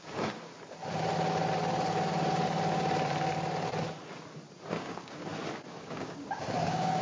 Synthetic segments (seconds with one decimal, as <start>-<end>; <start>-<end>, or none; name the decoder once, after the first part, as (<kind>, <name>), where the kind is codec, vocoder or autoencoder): 0.0-0.5 (codec, DAC); 4.7-5.3; 5.8-7.0